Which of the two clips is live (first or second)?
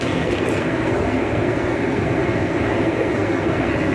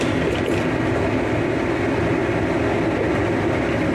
second